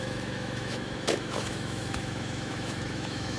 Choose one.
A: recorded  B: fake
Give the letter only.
B